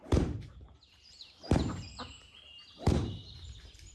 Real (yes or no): no